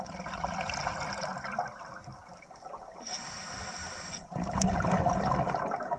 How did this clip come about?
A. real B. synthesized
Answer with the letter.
A